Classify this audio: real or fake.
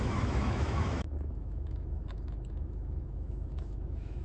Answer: fake